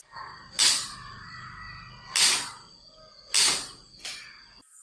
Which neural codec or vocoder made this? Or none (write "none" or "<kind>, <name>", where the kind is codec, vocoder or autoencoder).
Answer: none